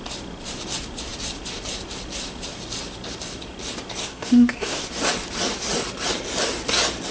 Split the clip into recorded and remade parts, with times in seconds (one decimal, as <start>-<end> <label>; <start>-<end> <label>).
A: 0.0-4.0 recorded; 4.0-4.9 remade; 4.9-7.1 recorded